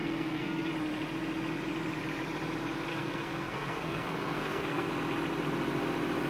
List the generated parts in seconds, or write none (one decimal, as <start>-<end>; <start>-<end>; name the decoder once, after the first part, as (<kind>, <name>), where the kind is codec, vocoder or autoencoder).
0.0-0.7 (codec, SNAC); 2.9-4.9